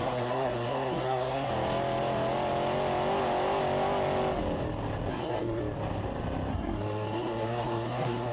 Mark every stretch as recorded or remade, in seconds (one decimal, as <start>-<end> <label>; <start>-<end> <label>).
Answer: 0.0-1.5 remade; 1.5-5.1 recorded; 5.1-5.6 remade; 5.6-6.5 recorded; 6.5-8.3 remade